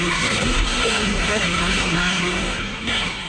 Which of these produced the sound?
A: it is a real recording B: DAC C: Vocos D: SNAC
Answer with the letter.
D